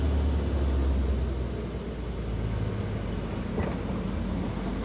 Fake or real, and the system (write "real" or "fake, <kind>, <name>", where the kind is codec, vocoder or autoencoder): real